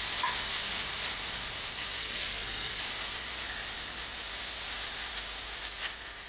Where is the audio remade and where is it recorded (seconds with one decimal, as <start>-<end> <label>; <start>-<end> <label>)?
0.0-2.0 recorded; 2.0-2.8 remade; 2.8-6.3 recorded